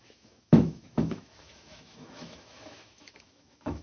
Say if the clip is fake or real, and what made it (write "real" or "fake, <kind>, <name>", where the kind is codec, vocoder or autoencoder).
fake, autoencoder, DAC-VAE